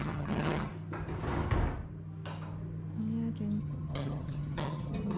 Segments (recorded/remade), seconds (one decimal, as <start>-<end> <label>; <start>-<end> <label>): 0.0-0.7 remade; 0.7-3.6 recorded; 3.6-5.2 remade